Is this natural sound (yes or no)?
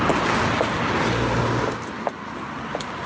yes